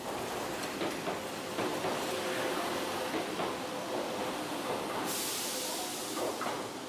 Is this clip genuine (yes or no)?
yes